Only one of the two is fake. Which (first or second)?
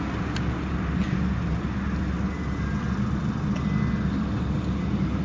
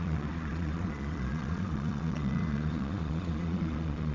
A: second